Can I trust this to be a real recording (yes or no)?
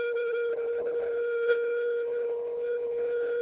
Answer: no